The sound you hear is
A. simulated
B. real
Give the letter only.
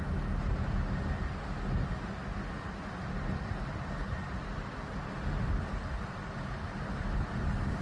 B